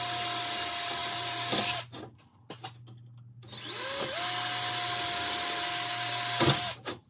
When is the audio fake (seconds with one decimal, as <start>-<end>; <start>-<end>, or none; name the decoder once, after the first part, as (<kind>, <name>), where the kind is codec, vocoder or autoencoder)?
none